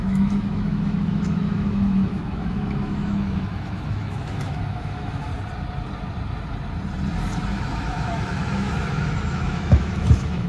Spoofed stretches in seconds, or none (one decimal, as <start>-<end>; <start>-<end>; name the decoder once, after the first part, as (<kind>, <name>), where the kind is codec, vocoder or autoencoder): 0.0-5.3 (autoencoder, DAC-VAE); 7.5-10.5